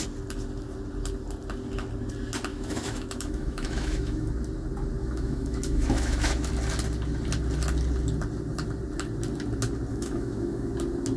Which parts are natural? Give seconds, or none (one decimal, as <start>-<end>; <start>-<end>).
0.0-2.5; 4.3-5.0; 6.5-9.9; 10.7-11.2